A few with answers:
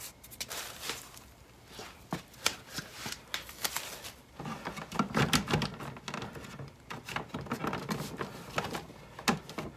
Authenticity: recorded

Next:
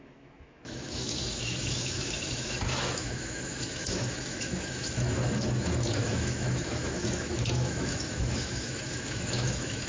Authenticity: remade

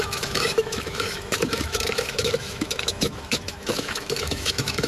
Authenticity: remade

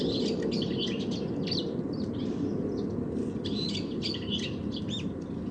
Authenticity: recorded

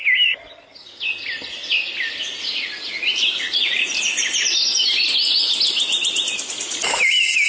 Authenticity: recorded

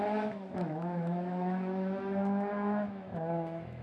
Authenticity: remade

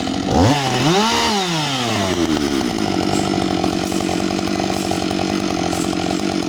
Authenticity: recorded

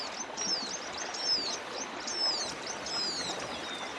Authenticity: recorded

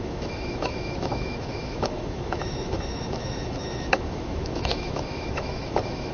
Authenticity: remade